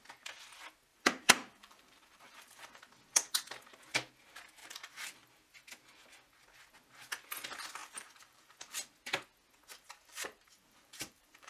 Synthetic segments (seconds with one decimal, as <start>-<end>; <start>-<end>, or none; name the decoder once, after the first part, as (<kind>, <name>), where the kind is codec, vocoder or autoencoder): 0.9-2.8 (vocoder, BigVGAN v2); 4.6-5.3; 7.8-8.5; 9.7-11.5